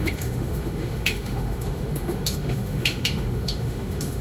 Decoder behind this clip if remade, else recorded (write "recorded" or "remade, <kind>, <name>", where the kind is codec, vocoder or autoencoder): remade, autoencoder, DAC-VAE